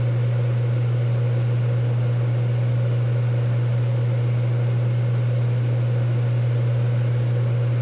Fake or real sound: real